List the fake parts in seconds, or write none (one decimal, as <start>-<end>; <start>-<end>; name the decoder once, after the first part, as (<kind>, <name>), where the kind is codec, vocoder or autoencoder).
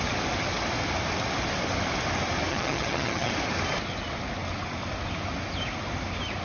2.5-3.3 (vocoder, HiFi-GAN)